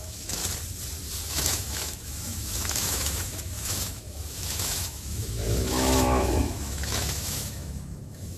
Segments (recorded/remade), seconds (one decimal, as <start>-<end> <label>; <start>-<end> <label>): 0.0-0.4 remade; 0.4-1.3 recorded; 1.3-8.4 remade